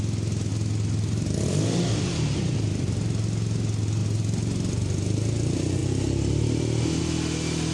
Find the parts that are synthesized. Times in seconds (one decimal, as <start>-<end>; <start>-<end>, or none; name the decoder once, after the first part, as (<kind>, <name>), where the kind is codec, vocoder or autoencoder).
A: none